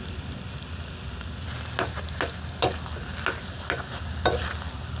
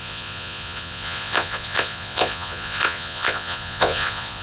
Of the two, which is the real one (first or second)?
first